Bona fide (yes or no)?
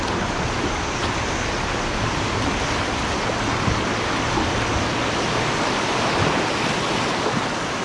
yes